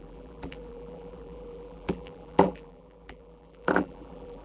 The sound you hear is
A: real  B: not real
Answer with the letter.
B